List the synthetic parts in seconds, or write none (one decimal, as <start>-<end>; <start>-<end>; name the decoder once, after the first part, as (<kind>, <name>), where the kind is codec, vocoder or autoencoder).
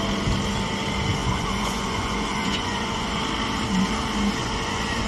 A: 1.2-3.2 (vocoder, Vocos); 4.4-5.1